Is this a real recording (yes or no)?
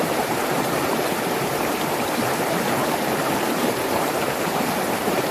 no